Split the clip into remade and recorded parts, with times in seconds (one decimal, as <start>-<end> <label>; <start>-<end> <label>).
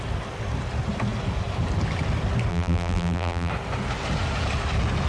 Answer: 0.0-2.5 recorded; 2.5-3.5 remade; 3.5-5.1 recorded